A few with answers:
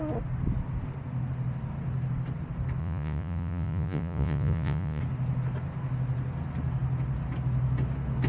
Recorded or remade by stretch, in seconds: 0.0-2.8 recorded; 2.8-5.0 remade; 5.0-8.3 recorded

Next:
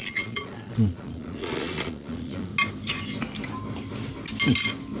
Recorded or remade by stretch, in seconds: 0.0-2.5 remade; 2.5-5.0 recorded

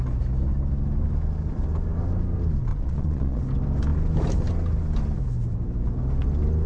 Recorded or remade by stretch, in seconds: 0.0-2.7 recorded; 2.7-3.4 remade; 3.4-6.7 recorded